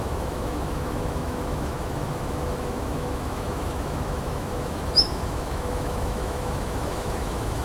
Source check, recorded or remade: remade